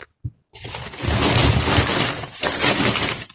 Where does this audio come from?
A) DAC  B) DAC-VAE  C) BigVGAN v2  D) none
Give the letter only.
D